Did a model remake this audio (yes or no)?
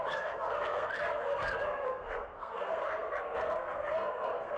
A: yes